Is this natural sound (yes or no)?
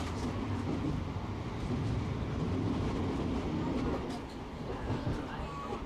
yes